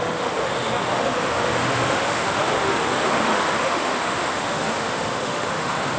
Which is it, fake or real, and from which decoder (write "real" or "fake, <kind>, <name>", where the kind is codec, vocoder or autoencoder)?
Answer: fake, autoencoder, DAC-VAE